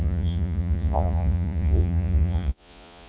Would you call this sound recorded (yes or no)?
no